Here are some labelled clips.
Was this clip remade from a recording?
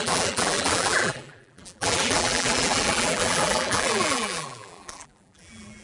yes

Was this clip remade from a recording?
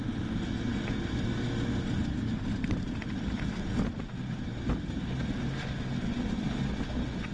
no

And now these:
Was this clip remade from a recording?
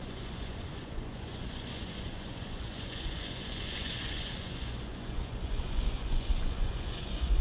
yes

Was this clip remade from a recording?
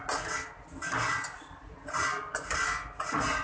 no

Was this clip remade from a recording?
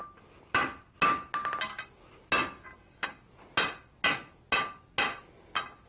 no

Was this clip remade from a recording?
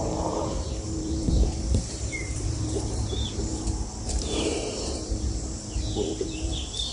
yes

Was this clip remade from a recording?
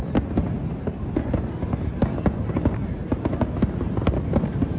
no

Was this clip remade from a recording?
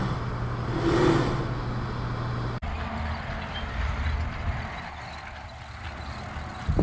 no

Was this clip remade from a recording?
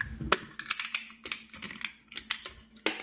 no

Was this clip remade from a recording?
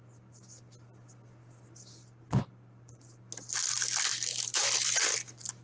no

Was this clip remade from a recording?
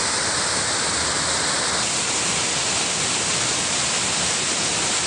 no